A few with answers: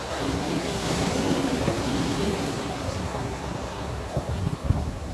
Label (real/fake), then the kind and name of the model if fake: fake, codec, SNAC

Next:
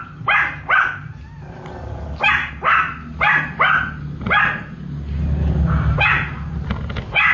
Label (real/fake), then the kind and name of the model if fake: real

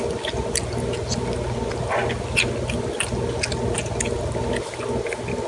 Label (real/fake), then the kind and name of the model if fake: real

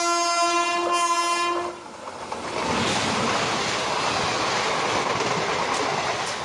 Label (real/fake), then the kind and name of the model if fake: real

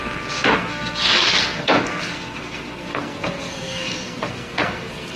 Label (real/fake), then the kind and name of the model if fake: fake, codec, SNAC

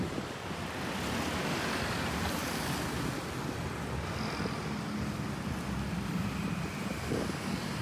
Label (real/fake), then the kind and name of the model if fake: real